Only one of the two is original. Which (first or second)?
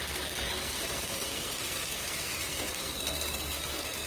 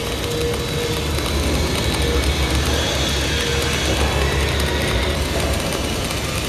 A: second